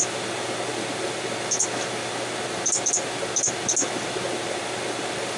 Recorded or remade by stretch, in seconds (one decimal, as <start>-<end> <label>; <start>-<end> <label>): 0.0-5.4 recorded